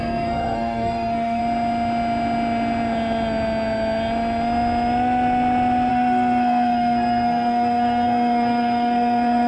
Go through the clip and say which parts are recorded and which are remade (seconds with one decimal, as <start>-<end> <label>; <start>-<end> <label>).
0.0-1.4 remade; 1.4-5.9 recorded; 5.9-9.5 remade